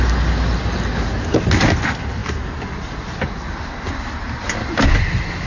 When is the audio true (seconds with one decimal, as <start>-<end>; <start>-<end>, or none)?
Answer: 0.0-5.5